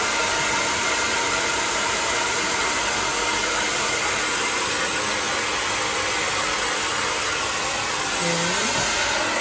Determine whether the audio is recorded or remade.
recorded